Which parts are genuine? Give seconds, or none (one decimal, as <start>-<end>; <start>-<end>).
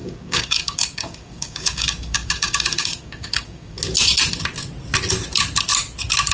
3.8-6.3